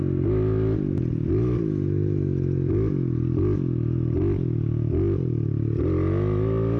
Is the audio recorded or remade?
recorded